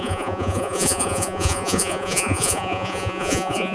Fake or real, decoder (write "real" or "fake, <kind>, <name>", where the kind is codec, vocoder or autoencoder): fake, vocoder, Vocos